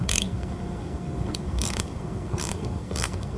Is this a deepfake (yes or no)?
yes